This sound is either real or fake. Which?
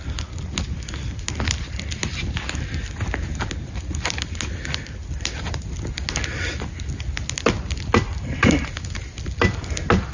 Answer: real